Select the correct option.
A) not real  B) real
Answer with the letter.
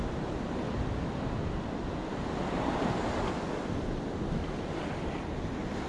B